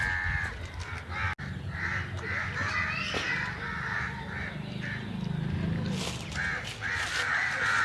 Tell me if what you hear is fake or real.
real